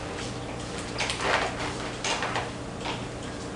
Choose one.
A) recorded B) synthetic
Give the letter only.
A